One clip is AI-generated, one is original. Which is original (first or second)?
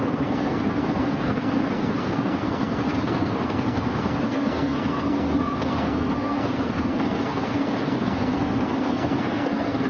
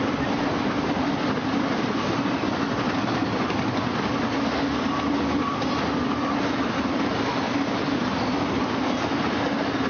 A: second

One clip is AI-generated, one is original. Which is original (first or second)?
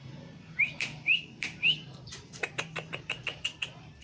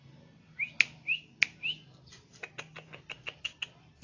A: second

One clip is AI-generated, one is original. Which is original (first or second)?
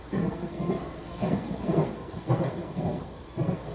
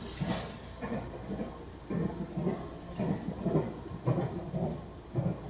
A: second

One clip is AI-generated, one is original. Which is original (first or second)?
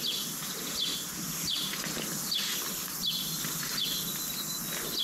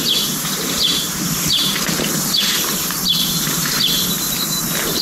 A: first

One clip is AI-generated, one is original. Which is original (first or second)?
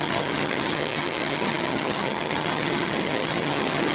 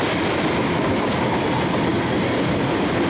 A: second